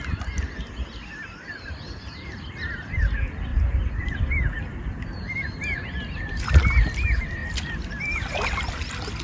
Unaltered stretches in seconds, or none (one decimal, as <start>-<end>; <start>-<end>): 0.0-3.5; 5.0-9.2